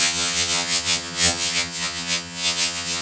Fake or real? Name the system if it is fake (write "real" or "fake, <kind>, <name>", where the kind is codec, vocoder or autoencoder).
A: fake, vocoder, HiFi-GAN